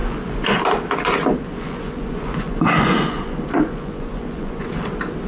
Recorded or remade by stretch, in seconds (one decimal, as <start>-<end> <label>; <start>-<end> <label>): 0.0-0.6 remade; 0.6-1.5 recorded; 1.5-4.7 remade; 4.7-5.3 recorded